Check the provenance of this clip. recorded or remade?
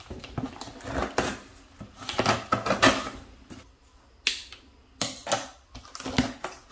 recorded